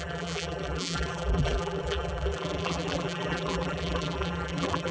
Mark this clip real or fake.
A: fake